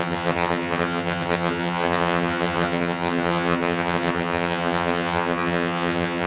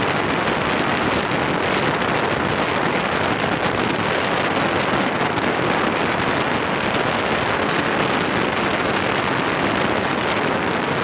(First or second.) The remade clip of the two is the first